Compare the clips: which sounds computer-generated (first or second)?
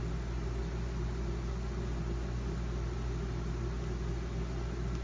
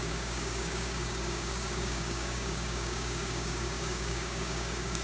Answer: second